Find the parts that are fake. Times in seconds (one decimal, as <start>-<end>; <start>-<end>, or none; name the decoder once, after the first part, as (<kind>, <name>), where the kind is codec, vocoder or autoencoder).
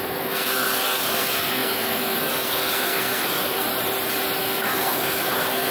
0.0-3.7 (codec, SNAC); 4.4-5.7